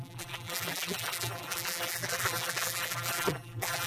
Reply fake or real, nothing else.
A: fake